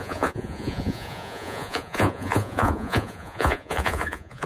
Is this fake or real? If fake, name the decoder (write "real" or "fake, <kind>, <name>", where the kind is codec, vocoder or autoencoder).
fake, vocoder, Vocos